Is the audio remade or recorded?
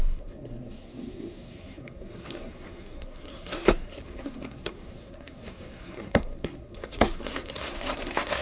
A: remade